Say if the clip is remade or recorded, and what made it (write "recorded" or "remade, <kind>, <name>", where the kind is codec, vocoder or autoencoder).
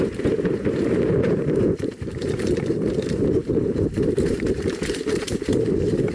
remade, vocoder, BigVGAN v2